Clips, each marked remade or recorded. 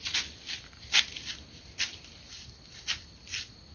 recorded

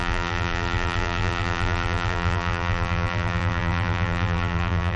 remade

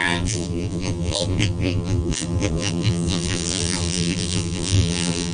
remade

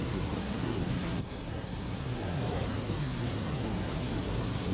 remade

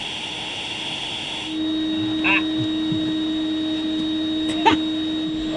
recorded